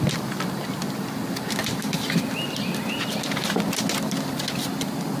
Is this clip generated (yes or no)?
no